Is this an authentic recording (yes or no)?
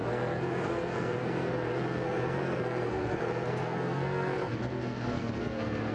no